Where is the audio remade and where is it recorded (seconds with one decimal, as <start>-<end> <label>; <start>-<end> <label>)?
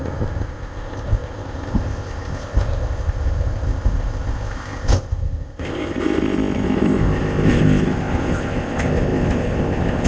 0.0-10.1 remade